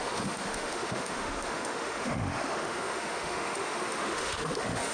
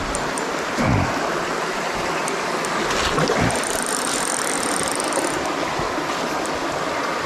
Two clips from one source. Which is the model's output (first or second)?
first